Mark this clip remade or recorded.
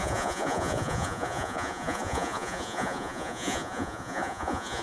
remade